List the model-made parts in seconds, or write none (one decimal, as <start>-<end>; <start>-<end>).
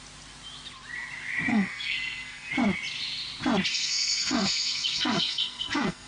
1.5-2.5; 3.7-6.1